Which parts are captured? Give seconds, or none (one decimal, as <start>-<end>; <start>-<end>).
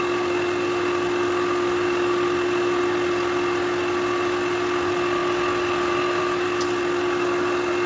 0.0-7.9